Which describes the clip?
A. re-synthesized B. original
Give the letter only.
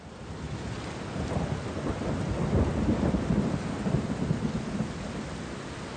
B